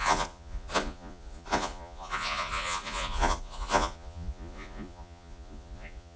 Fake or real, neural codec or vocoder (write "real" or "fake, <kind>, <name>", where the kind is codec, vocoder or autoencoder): fake, vocoder, Vocos